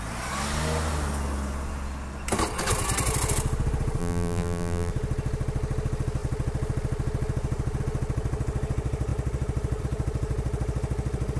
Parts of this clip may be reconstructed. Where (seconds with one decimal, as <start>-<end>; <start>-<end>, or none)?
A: 4.0-4.9